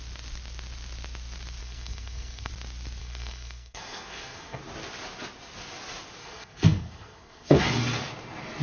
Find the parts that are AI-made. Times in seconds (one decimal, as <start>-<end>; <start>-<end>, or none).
1.6-2.5; 3.0-4.6; 6.2-7.6